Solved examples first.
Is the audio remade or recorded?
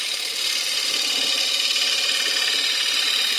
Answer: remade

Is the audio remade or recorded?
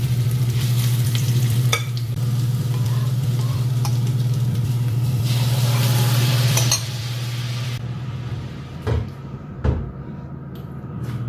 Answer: remade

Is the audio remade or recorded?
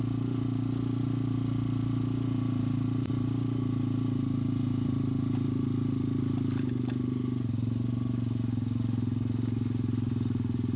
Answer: remade